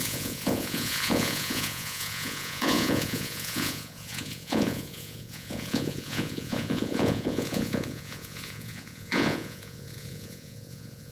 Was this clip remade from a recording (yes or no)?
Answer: yes